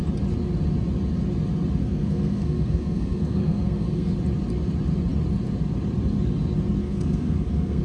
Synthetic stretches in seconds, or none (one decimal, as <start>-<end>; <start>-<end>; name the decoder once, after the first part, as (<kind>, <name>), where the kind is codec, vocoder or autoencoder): 1.8-4.1 (codec, SNAC); 6.8-7.8